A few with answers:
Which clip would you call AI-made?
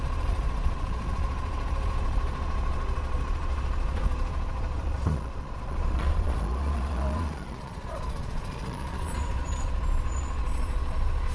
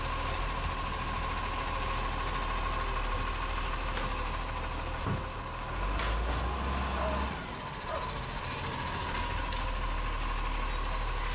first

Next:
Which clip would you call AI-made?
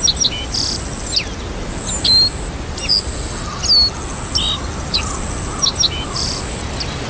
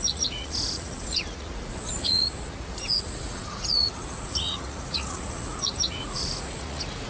second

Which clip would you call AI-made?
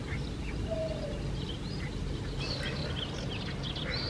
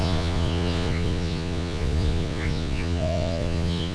second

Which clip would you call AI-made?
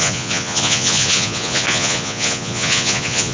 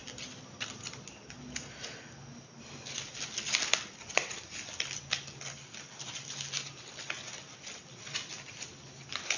first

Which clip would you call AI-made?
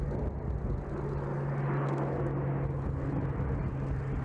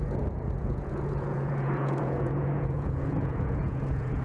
second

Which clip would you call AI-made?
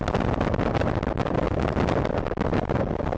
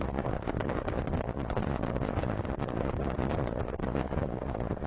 second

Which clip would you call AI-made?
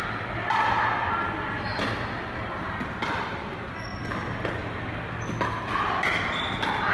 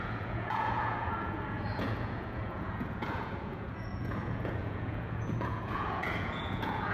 second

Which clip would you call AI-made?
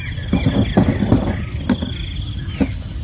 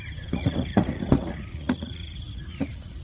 second